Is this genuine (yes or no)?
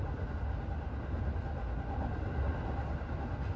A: yes